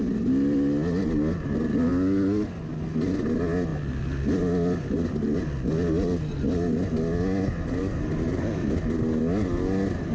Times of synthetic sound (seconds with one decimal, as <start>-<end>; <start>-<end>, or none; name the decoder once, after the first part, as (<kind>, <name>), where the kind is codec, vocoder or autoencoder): none